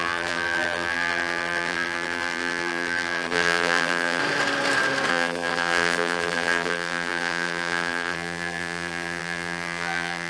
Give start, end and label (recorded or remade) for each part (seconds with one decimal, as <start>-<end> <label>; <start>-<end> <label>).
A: 0.0-4.2 remade; 4.2-5.1 recorded; 5.1-10.3 remade